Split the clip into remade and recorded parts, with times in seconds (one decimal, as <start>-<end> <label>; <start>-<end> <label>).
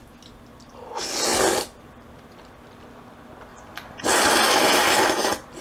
0.0-3.5 recorded; 3.5-4.3 remade; 4.3-5.6 recorded